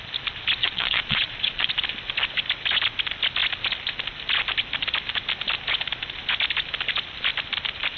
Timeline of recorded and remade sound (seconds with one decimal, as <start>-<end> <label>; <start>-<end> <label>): 0.0-0.6 recorded; 0.6-1.7 remade; 1.7-8.0 recorded